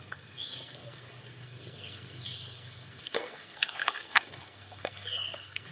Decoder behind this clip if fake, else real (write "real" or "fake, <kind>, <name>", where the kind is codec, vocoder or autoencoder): fake, codec, SNAC